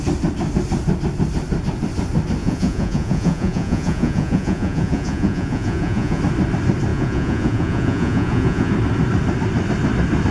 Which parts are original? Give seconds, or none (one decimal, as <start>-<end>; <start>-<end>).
0.0-2.4; 6.2-6.9; 8.7-10.3